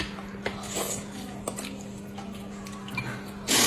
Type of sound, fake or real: real